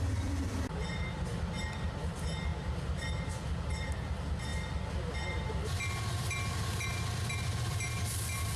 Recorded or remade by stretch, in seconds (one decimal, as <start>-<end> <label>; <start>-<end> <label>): 0.0-1.3 remade; 1.3-1.9 recorded; 1.9-4.5 remade; 4.5-5.5 recorded; 5.5-8.6 remade